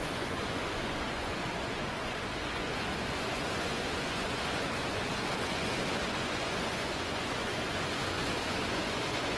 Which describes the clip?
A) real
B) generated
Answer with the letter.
B